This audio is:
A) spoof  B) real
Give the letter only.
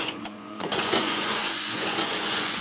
A